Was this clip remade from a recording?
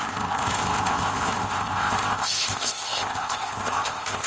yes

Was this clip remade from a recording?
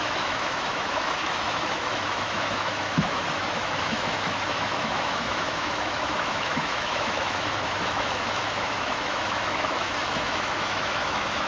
yes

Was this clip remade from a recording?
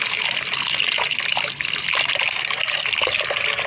no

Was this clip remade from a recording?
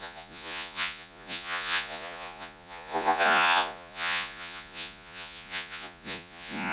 yes